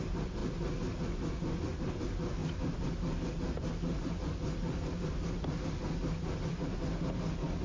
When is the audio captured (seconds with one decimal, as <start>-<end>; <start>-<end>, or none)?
0.0-7.6